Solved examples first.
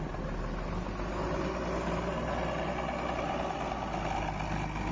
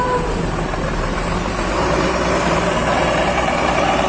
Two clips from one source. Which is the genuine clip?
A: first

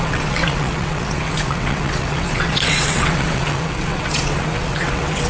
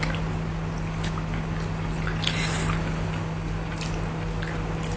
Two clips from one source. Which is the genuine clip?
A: second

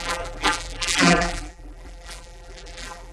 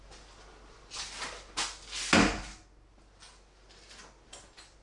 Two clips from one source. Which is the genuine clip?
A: second